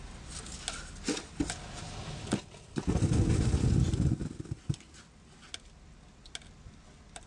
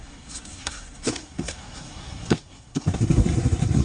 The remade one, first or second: second